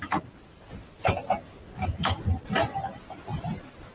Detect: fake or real real